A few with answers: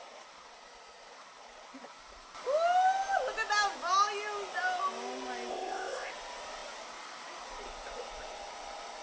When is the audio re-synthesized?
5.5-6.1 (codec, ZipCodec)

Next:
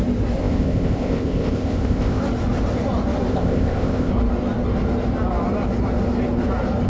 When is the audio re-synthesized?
0.4-2.2 (codec, ZipCodec); 3.3-4.1

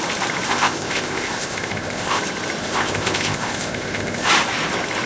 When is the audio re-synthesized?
0.5-2.2 (codec, ZipCodec); 2.6-4.3

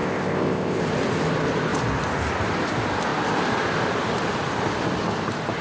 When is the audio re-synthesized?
0.0-0.8 (codec, ZipCodec)

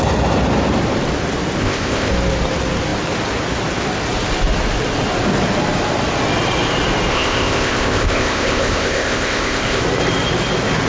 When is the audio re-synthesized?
1.6-2.1 (codec, ZipCodec); 7.1-9.8

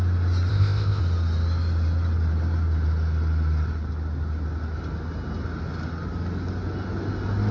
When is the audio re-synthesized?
0.5-1.0 (codec, ZipCodec)

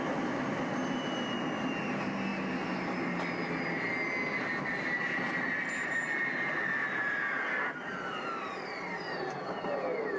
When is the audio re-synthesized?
none

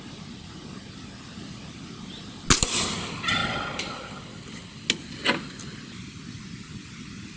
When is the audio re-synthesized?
none